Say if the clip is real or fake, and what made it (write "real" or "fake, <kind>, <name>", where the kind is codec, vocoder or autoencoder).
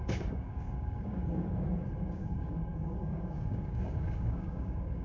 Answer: fake, codec, DAC